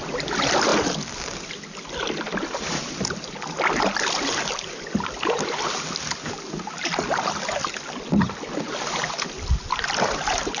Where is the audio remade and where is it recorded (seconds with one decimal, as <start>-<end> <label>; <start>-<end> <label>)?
0.0-10.6 recorded